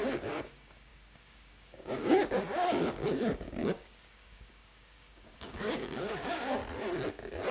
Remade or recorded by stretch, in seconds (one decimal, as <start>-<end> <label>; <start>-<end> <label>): 0.0-6.6 remade; 6.6-7.5 recorded